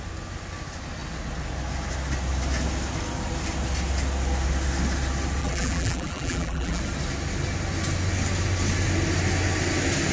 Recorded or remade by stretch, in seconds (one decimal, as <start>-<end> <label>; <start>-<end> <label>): 0.0-5.4 recorded; 5.4-6.8 remade; 6.8-10.1 recorded